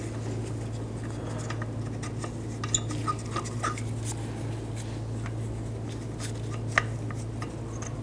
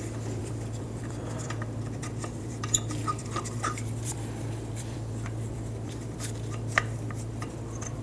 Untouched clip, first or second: first